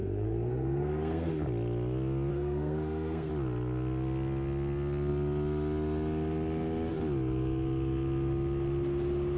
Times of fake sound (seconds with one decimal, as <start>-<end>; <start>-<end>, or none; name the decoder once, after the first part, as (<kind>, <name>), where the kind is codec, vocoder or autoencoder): 0.0-1.3 (codec, SNAC); 2.3-3.3